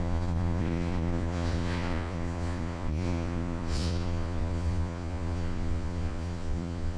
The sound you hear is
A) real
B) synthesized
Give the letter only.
B